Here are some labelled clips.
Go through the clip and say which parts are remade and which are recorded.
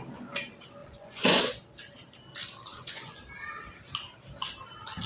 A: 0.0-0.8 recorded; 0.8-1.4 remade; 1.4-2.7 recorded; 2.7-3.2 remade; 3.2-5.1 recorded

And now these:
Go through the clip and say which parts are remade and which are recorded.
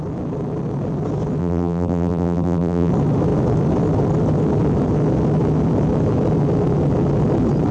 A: 0.0-1.4 recorded; 1.4-2.9 remade; 2.9-7.7 recorded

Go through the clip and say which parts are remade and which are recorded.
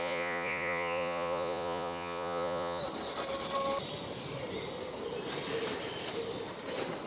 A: 0.0-2.8 remade; 2.8-7.1 recorded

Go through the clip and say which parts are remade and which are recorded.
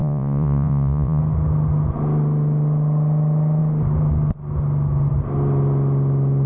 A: 0.0-1.2 remade; 1.2-6.5 recorded